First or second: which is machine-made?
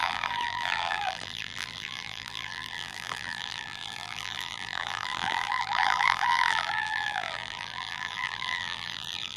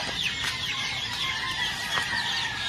first